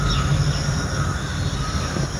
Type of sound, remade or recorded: recorded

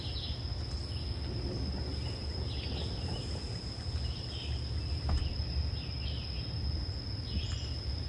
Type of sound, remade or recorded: recorded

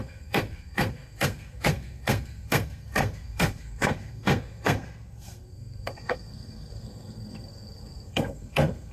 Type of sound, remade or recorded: remade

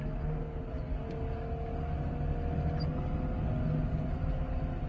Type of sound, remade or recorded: recorded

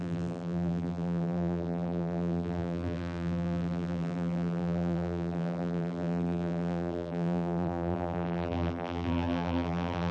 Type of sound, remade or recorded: remade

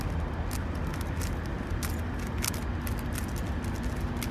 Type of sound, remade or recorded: recorded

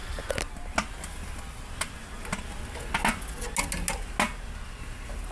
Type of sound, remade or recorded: recorded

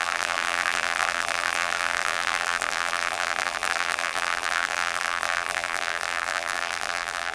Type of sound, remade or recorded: remade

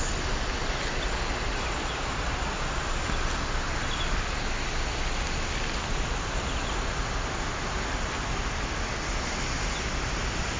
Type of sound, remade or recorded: recorded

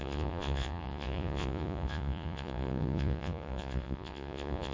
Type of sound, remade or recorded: remade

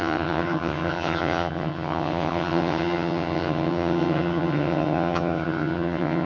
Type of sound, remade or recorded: remade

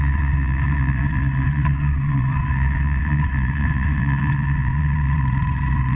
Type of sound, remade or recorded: remade